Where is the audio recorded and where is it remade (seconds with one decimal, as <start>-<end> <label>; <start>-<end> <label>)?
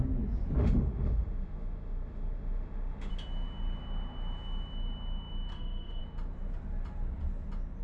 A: 0.0-0.6 recorded; 0.6-3.1 remade; 3.1-5.5 recorded; 5.5-6.0 remade; 6.0-7.8 recorded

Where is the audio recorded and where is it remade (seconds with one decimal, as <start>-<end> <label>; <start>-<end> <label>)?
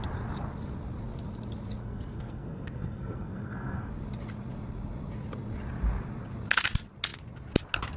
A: 0.0-1.8 recorded; 1.8-3.9 remade; 3.9-8.0 recorded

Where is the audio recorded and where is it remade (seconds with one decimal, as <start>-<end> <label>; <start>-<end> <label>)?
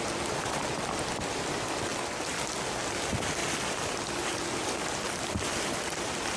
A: 0.0-6.4 recorded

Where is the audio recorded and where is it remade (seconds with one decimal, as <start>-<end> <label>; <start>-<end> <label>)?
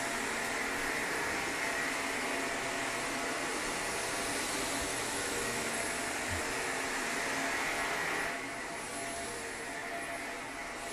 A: 0.0-4.9 recorded; 4.9-5.8 remade; 5.8-10.9 recorded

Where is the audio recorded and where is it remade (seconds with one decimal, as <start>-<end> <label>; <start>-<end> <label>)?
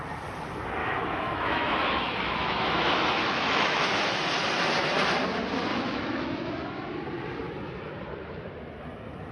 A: 0.0-0.8 recorded; 0.8-3.9 remade; 3.9-5.7 recorded; 5.7-6.5 remade; 6.5-9.3 recorded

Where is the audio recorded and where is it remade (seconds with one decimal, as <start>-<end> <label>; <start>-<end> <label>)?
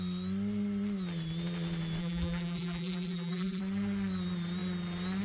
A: 0.0-2.0 recorded; 2.0-3.6 remade; 3.6-5.2 recorded